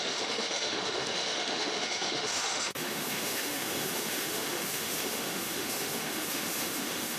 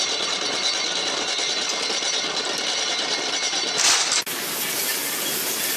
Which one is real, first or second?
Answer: second